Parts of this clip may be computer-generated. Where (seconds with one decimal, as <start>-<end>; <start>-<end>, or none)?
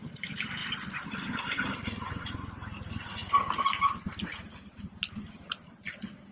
0.6-2.1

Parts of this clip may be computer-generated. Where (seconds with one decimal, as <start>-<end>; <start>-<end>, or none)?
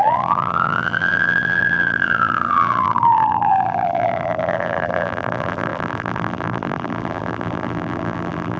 0.0-8.6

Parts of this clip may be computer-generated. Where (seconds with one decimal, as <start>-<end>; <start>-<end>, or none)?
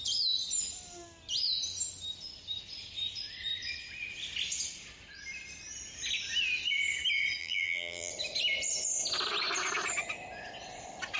7.4-8.1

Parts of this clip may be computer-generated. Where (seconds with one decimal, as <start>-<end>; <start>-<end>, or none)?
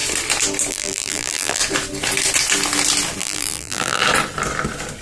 0.7-1.6; 3.2-4.0